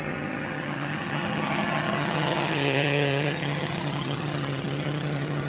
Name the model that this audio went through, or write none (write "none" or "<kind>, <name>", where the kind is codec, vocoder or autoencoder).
vocoder, HiFi-GAN